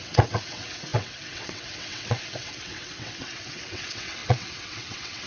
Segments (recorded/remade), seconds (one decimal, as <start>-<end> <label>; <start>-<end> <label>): 0.0-5.3 remade